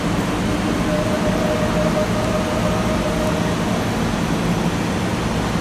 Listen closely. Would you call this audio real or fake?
real